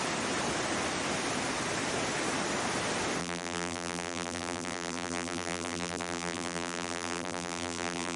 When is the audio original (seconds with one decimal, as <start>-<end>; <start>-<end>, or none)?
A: 0.0-3.2